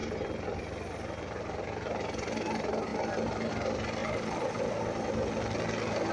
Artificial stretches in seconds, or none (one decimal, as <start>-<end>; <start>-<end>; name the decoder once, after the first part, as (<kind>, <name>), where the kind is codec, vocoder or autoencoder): 0.0-0.6 (vocoder, BigVGAN v2); 4.0-4.7